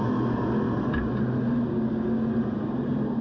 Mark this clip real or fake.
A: real